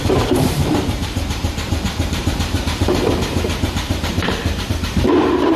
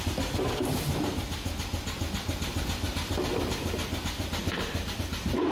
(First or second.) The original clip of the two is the second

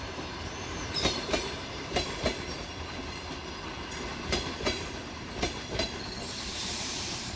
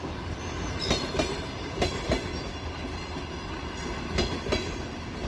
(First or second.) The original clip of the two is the second